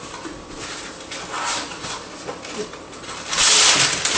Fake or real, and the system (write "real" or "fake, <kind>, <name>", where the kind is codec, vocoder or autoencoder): real